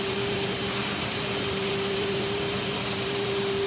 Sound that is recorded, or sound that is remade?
remade